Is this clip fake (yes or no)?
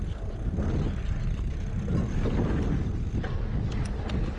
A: no